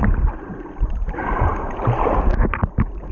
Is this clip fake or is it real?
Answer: real